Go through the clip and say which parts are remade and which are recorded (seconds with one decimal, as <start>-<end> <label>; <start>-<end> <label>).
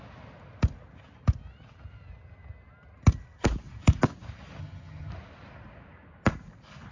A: 0.0-4.6 recorded; 4.6-5.1 remade; 5.1-6.9 recorded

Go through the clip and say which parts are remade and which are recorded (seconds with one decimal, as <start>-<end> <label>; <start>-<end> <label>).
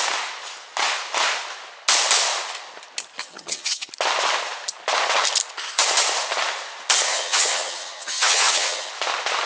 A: 0.0-3.2 recorded; 3.2-3.9 remade; 3.9-7.1 recorded; 7.1-8.9 remade; 8.9-9.5 recorded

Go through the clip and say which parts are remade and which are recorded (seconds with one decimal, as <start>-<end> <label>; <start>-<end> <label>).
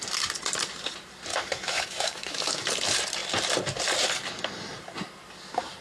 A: 0.0-1.3 recorded; 1.3-2.7 remade; 2.7-5.8 recorded